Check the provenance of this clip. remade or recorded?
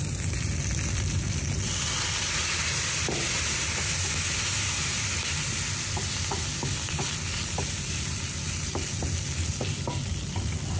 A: recorded